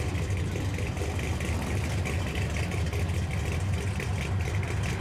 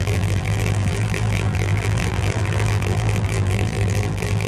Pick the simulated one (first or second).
second